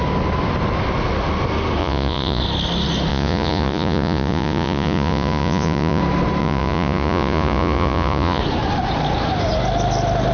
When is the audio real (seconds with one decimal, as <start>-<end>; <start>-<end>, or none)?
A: 0.0-1.8; 2.4-3.1; 6.0-6.4; 8.4-10.3